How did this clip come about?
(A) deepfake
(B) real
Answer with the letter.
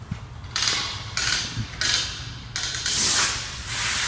B